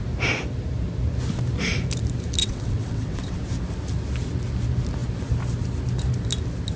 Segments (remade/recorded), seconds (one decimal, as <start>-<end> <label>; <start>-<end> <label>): 0.0-2.4 recorded; 2.4-3.4 remade; 3.4-6.8 recorded